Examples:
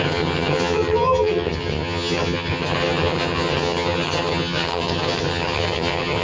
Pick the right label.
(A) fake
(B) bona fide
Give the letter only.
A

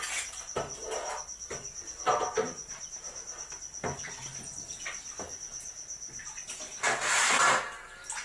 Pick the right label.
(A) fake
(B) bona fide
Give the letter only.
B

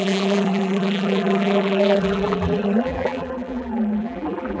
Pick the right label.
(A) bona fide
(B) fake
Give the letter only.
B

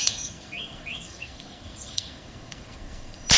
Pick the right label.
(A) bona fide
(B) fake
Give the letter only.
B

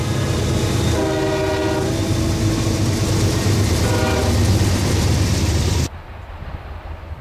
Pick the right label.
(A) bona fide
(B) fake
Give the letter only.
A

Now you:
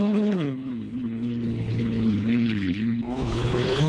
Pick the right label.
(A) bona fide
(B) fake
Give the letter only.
B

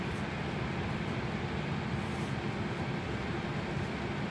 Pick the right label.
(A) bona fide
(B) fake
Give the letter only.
A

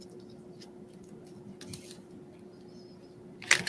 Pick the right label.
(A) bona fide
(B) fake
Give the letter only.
A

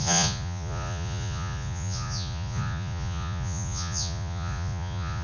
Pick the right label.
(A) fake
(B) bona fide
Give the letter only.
A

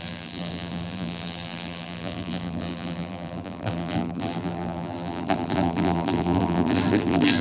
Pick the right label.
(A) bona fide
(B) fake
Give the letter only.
B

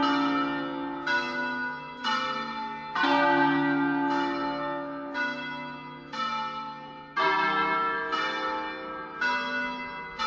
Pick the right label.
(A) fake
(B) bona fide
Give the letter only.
B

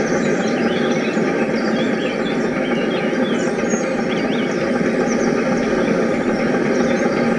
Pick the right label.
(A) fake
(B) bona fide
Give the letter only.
B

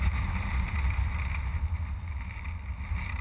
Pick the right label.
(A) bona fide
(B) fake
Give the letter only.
A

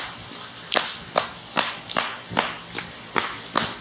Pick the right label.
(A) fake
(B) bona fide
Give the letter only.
B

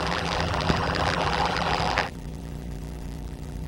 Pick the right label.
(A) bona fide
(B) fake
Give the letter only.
B